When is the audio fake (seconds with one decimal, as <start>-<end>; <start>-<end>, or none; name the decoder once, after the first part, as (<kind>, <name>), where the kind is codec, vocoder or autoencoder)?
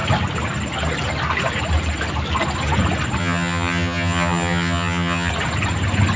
3.2-5.3 (vocoder, HiFi-GAN)